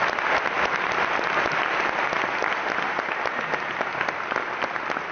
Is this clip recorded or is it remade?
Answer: recorded